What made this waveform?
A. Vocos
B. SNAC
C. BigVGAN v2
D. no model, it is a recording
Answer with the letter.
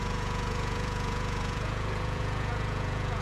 A